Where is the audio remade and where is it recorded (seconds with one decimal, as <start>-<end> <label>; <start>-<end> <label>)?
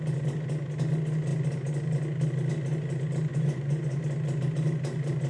0.0-3.3 recorded; 3.3-4.0 remade; 4.0-5.3 recorded